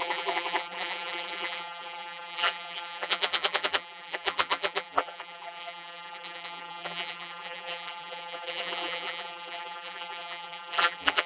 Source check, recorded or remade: remade